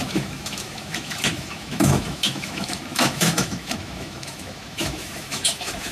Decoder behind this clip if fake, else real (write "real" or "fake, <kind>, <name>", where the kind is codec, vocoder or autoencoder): fake, autoencoder, DAC-VAE